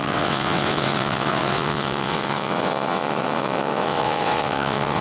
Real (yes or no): no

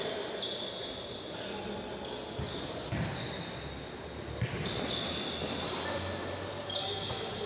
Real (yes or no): yes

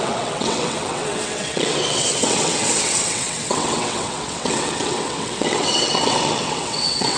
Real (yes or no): no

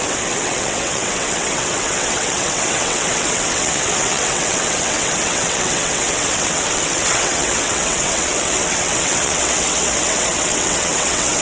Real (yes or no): no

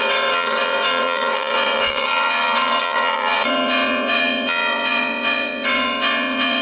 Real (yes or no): no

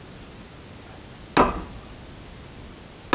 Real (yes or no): yes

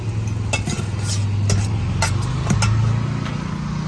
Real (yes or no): yes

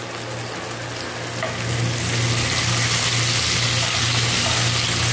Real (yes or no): yes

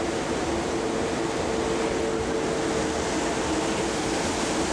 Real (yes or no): yes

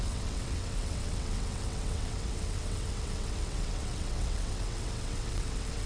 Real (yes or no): no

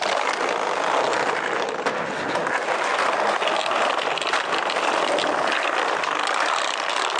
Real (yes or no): yes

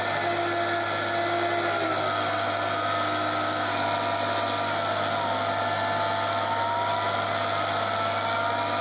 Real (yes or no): yes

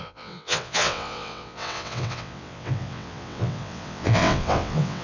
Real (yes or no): no